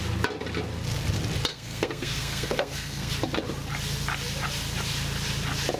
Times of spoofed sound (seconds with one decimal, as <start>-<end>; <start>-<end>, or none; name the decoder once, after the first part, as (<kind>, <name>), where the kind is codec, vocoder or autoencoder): 1.5-3.1 (codec, SNAC)

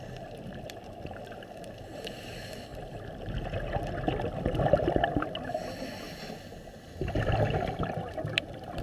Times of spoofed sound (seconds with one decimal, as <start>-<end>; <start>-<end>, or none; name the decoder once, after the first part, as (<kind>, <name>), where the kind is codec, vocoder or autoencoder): 0.0-2.7 (vocoder, BigVGAN v2); 7.9-8.8

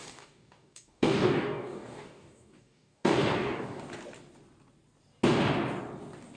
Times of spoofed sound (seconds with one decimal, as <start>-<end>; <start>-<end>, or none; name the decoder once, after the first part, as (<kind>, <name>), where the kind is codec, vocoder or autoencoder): 0.0-3.8 (codec, DAC)

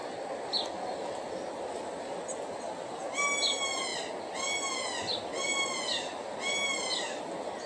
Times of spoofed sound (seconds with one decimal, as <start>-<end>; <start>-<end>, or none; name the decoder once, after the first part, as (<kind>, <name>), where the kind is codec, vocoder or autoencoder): none

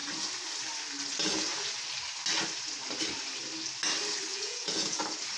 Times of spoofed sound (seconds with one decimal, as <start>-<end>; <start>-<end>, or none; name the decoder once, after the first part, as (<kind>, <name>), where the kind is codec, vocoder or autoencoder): 4.3-5.0 (vocoder, Vocos)

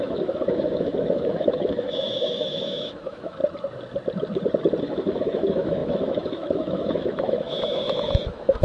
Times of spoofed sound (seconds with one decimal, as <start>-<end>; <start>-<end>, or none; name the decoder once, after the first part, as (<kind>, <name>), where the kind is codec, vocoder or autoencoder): 0.0-3.4 (autoencoder, DAC-VAE); 4.8-8.6

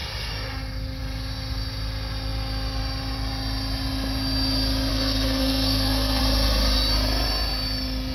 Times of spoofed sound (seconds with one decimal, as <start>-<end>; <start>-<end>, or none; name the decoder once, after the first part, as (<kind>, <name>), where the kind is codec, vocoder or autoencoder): 4.9-6.2 (codec, SNAC)